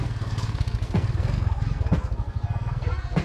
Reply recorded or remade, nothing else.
remade